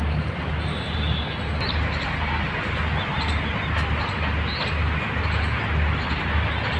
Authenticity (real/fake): real